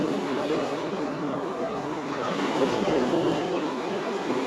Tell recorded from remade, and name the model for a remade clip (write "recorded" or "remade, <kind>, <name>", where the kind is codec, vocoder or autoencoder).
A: remade, codec, SNAC